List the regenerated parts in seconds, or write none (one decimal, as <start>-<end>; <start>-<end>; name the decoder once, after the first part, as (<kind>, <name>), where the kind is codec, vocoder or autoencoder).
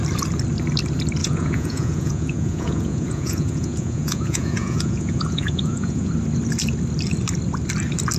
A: 1.2-6.1 (vocoder, Vocos)